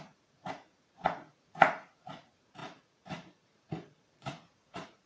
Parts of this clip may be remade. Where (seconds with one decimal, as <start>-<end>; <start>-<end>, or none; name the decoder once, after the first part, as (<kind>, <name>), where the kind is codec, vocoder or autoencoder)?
0.0-5.1 (vocoder, Vocos)